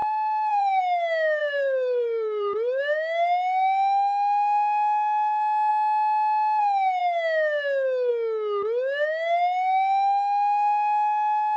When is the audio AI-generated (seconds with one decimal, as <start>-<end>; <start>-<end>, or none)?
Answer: 0.0-0.8; 1.4-2.8